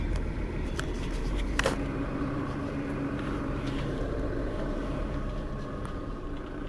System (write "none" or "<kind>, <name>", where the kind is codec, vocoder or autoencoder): vocoder, BigVGAN v2